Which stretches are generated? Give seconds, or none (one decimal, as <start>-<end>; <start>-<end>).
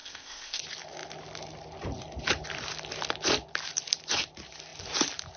0.0-0.6